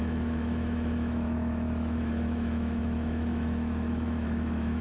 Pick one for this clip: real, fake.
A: fake